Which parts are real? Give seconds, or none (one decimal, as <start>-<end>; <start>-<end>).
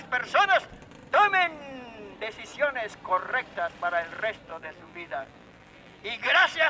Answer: 0.0-4.5; 6.0-6.7